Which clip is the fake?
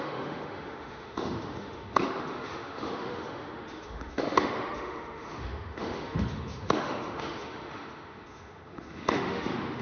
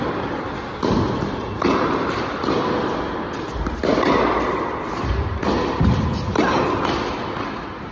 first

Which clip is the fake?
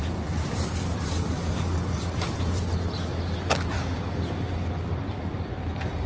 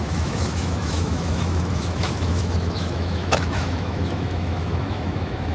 second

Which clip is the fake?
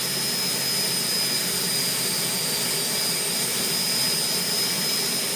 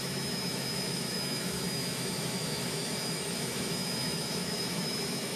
second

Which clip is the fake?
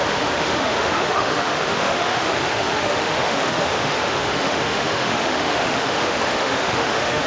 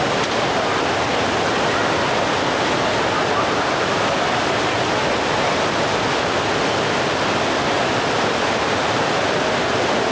first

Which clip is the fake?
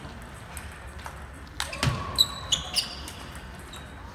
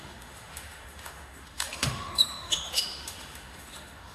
second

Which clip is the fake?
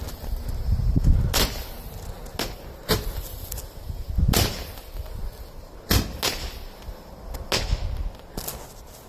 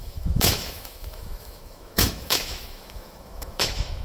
second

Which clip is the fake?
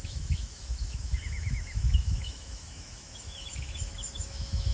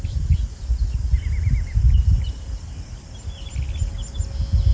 first